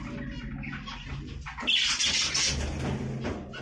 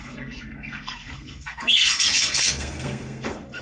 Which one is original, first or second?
first